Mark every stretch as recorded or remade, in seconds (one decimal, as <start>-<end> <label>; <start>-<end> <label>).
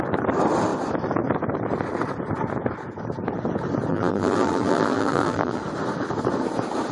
0.0-3.9 recorded; 3.9-5.6 remade; 5.6-6.9 recorded